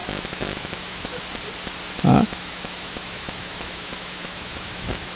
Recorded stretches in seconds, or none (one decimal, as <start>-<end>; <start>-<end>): 1.2-2.1